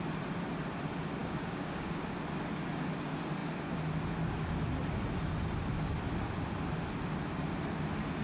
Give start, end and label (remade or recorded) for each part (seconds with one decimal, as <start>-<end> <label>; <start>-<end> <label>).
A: 0.0-1.2 recorded; 1.2-2.2 remade; 2.2-8.2 recorded